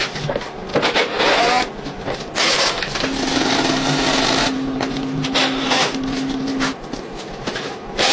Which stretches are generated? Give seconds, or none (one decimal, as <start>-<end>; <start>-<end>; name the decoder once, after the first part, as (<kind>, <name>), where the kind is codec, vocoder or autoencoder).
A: 6.5-8.1 (vocoder, BigVGAN v2)